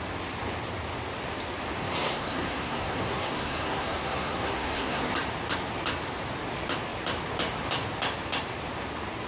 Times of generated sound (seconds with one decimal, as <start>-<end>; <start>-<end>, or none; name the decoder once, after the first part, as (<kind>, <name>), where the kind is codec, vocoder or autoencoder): 1.8-5.0 (codec, SNAC)